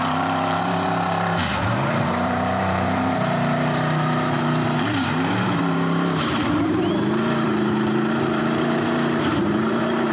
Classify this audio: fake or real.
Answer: fake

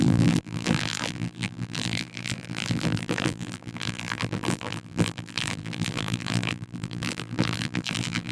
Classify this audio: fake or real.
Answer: fake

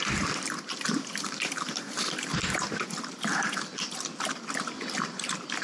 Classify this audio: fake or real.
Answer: fake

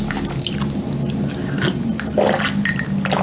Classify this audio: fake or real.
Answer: real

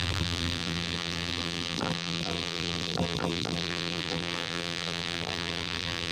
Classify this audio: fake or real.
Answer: fake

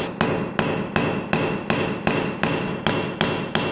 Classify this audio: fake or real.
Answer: real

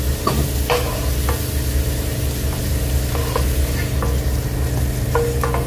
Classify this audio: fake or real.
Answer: real